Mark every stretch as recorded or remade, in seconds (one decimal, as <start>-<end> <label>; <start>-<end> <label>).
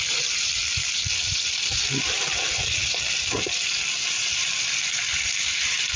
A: 0.0-6.0 recorded